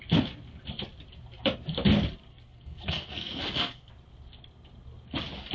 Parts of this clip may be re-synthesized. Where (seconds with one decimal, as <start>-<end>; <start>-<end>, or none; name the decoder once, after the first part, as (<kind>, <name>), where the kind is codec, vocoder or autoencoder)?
2.3-3.9 (codec, SNAC)